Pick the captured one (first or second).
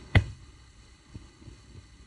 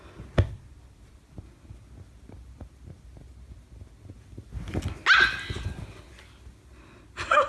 second